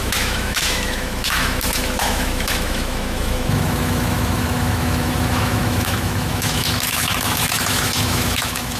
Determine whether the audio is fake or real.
fake